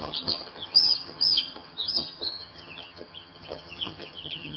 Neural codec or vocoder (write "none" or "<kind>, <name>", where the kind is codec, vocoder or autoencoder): vocoder, HiFi-GAN